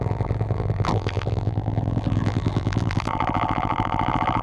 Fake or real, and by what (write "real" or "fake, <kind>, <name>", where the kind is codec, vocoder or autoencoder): fake, vocoder, BigVGAN v2